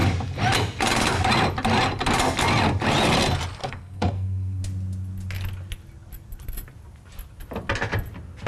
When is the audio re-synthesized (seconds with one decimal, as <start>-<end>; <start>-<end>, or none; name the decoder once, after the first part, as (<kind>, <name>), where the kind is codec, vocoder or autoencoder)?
3.6-4.6 (codec, SNAC)